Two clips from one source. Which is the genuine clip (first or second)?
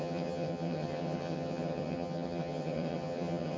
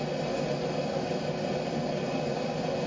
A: second